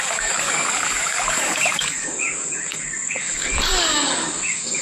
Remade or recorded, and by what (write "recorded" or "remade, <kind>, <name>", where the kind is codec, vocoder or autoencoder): remade, codec, DAC